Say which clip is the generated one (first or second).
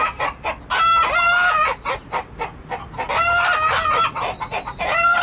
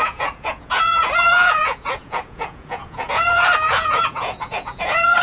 second